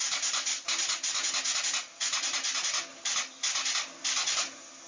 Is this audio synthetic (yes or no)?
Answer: no